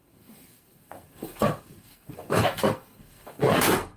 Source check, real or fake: fake